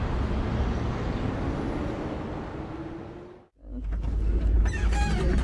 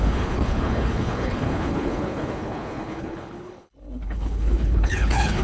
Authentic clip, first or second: first